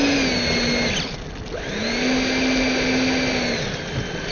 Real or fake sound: real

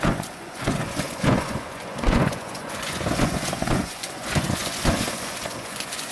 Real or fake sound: fake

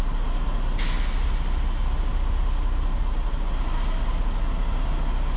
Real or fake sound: real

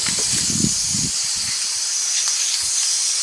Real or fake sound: real